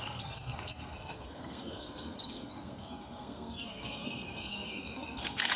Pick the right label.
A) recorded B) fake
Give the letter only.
B